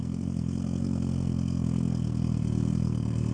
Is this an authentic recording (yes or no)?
no